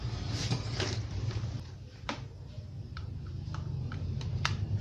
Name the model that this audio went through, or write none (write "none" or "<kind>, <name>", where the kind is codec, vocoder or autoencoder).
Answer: vocoder, BigVGAN v2